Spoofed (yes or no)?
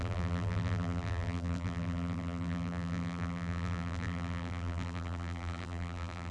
yes